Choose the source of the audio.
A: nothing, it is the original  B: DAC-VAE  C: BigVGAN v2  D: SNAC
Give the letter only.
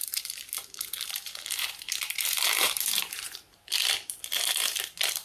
C